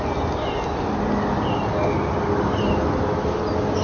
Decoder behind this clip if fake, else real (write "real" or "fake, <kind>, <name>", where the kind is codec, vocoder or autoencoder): real